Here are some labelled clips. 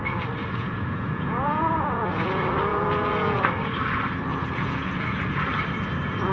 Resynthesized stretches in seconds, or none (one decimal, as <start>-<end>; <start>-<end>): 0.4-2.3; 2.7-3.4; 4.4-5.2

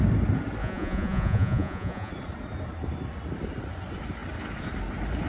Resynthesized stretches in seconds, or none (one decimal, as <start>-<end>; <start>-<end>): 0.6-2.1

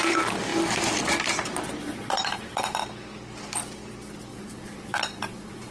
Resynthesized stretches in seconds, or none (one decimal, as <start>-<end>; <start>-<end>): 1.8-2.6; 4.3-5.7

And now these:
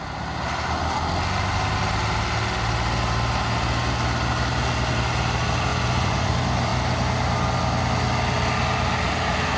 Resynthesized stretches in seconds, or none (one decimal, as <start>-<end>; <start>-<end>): 5.7-6.3

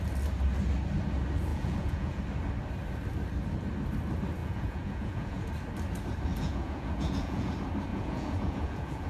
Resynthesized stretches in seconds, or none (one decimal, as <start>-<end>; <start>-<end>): 1.5-2.2; 4.4-5.5; 6.3-7.5; 7.9-9.1

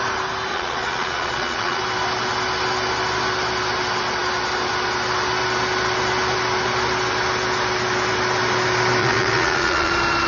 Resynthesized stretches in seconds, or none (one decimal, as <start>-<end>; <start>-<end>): 0.5-1.8; 9.0-9.9